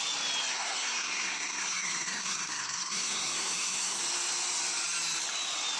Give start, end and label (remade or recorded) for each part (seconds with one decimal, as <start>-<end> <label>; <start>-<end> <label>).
0.0-0.5 recorded; 0.5-4.0 remade; 4.0-5.8 recorded